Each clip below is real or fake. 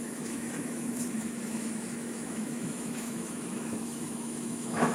fake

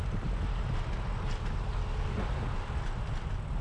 real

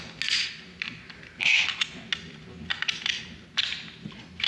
real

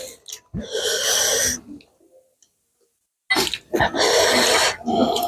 real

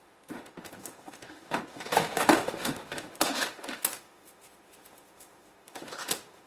fake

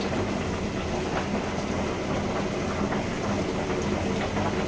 real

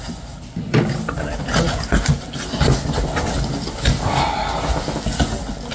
real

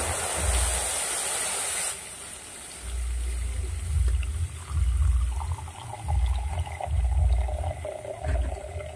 real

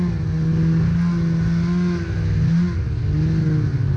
real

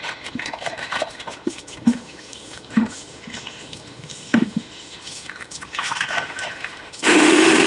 fake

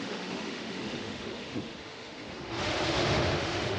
fake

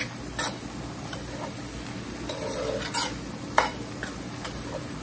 real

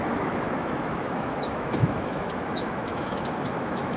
fake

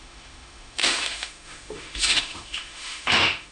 fake